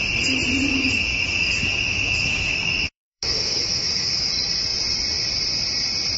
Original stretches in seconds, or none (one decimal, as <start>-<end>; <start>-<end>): 0.0-0.7; 4.3-6.2

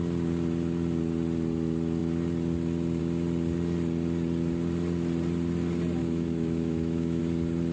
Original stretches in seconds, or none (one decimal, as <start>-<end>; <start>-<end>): 0.0-6.0; 7.2-7.7